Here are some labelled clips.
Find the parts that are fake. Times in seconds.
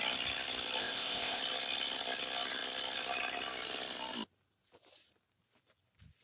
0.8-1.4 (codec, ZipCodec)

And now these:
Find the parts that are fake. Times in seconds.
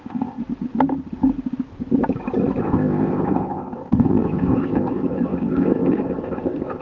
0.0-0.4 (codec, ZipCodec); 2.6-6.8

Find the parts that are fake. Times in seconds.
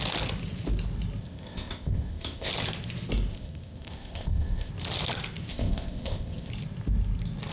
1.2-2.5 (codec, ZipCodec); 3.3-4.7; 5.5-6.5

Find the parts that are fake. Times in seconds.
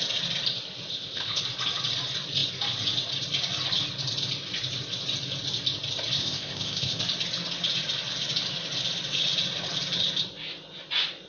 0.9-1.4 (codec, ZipCodec); 6.2-7.0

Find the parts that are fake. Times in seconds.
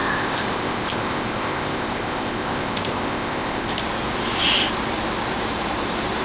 0.0-3.7 (codec, ZipCodec)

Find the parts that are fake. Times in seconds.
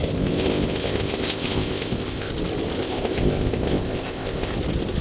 0.0-2.3 (codec, ZipCodec); 2.8-4.5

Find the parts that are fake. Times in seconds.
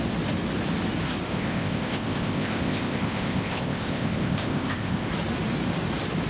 1.3-5.1 (codec, ZipCodec)